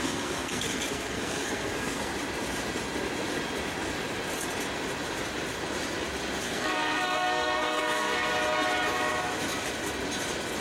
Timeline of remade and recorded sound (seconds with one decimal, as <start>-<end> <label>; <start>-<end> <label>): 0.0-2.1 remade; 2.1-6.4 recorded; 6.4-8.3 remade; 8.3-10.6 recorded